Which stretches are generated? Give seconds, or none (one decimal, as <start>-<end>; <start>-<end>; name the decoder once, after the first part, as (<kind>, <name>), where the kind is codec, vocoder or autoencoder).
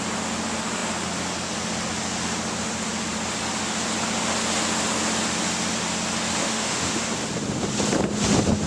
6.4-7.0 (autoencoder, DAC-VAE)